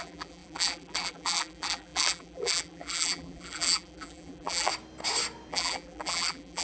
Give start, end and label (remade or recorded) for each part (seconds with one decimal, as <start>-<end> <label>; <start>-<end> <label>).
0.0-4.7 remade; 4.7-5.5 recorded; 5.5-6.6 remade